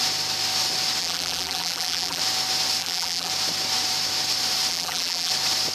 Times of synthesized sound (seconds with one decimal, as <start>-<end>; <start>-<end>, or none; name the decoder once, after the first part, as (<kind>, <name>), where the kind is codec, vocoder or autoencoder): 1.0-2.2 (vocoder, BigVGAN v2); 2.8-3.3; 4.7-5.3